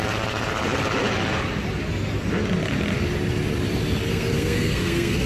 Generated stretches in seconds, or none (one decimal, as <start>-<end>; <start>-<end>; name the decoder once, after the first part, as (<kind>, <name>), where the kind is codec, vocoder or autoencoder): 4.1-5.3 (codec, SNAC)